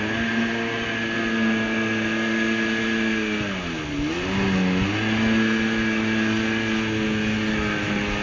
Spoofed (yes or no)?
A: no